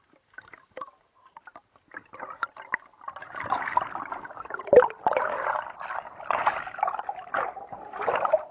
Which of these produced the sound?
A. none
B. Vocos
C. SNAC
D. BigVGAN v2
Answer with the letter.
A